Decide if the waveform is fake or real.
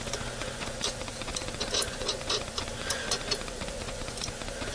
fake